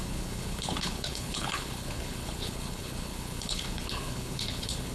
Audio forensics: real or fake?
fake